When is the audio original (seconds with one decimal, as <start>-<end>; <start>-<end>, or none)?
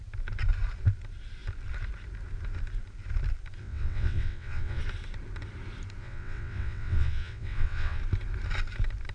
0.0-3.6; 4.8-6.0; 8.0-9.1